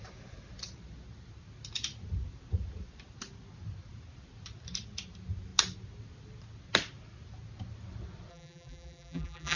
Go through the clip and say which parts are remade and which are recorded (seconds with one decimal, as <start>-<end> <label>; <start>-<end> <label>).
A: 0.0-8.3 recorded; 8.3-9.6 remade